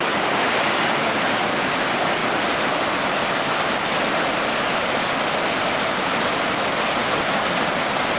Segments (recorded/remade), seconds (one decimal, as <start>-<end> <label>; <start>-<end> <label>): 0.0-8.2 recorded